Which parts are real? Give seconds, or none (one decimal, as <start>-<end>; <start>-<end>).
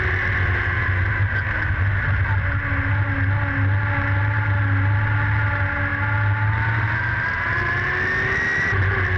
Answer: 0.0-9.2